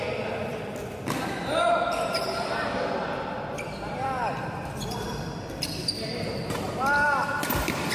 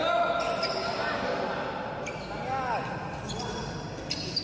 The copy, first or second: first